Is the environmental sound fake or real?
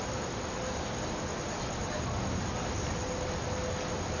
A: real